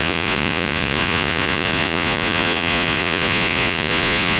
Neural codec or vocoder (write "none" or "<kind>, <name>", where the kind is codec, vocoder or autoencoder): vocoder, Vocos